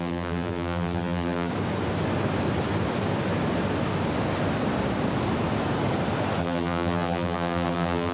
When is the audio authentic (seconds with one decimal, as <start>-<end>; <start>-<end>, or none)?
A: 1.5-6.4